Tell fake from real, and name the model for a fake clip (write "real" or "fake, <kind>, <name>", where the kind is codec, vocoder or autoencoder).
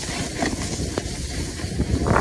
real